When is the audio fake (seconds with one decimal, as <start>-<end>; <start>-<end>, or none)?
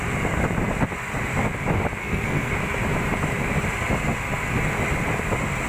2.0-2.5